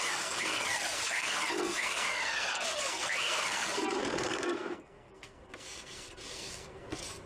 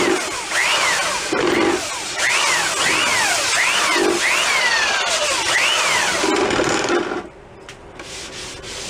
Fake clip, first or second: first